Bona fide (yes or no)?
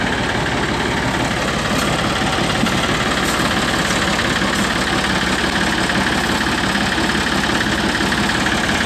yes